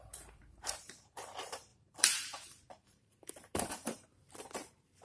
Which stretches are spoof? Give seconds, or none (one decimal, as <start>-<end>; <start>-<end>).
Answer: 0.0-5.0